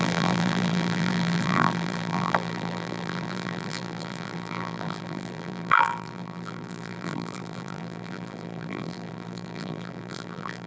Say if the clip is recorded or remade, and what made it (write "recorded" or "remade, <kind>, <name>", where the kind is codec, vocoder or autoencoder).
remade, vocoder, BigVGAN v2